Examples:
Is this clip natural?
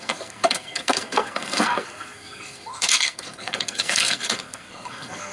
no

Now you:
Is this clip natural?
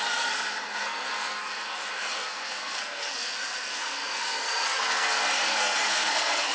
no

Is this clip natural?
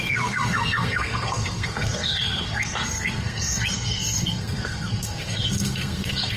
no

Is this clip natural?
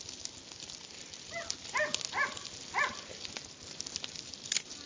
yes